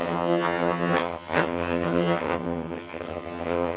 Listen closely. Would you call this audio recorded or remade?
remade